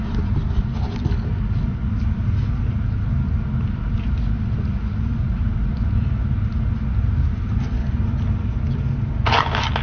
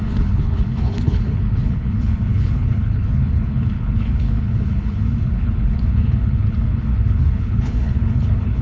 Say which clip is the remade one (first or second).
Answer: second